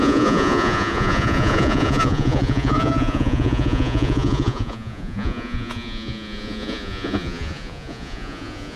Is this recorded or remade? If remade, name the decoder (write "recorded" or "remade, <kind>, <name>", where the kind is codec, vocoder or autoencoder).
remade, vocoder, Vocos